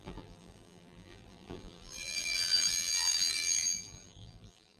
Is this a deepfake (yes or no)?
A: yes